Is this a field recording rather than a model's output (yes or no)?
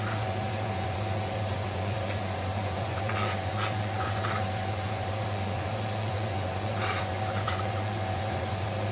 no